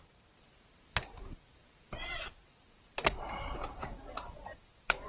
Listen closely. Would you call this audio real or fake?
fake